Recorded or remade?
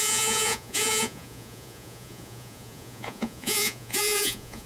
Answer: remade